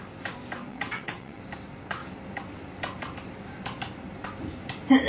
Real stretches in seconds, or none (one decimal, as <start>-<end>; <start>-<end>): 0.0-0.7; 1.4-5.1